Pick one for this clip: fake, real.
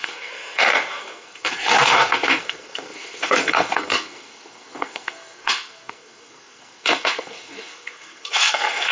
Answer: fake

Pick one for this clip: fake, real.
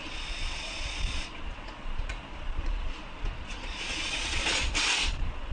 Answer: fake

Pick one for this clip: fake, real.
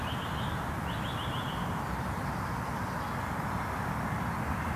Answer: real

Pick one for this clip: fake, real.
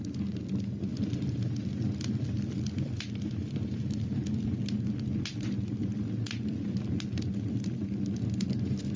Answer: real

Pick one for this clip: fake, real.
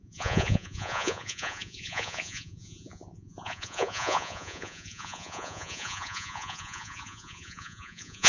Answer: fake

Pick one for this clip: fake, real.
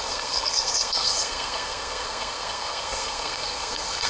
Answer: fake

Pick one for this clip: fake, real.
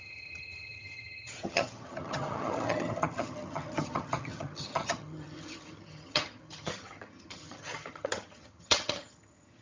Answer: fake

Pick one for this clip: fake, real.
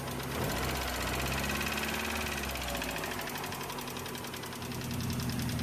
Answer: real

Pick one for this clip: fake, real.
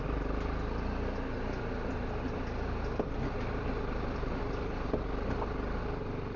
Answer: real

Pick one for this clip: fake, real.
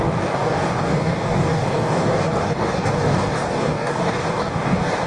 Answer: fake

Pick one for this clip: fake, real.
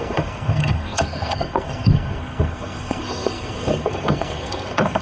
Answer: fake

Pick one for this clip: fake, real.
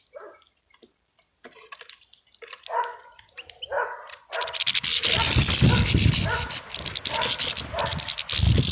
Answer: real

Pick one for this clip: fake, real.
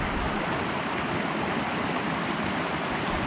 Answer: real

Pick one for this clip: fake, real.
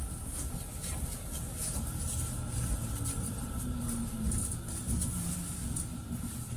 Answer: real